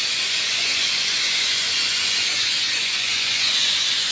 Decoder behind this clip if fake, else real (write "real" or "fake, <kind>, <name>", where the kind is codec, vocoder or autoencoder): fake, vocoder, Vocos